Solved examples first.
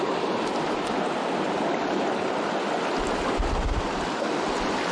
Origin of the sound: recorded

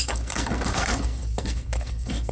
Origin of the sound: remade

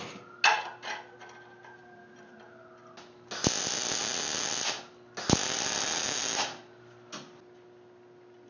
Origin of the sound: recorded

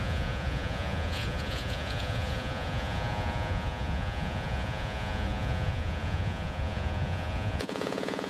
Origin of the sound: remade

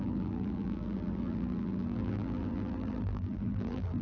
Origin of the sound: remade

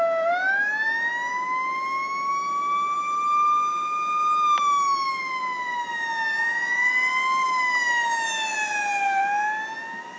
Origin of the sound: recorded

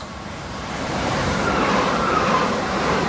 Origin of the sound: remade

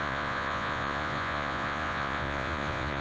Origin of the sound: remade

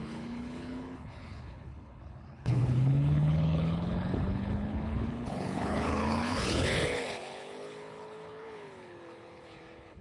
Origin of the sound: remade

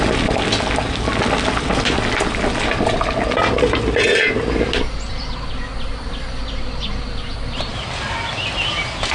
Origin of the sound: recorded